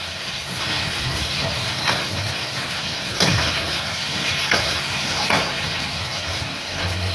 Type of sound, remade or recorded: remade